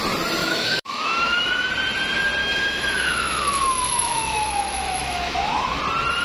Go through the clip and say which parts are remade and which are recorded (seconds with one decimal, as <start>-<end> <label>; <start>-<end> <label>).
0.0-0.4 recorded; 0.4-1.7 remade; 1.7-2.4 recorded; 2.4-5.8 remade; 5.8-6.2 recorded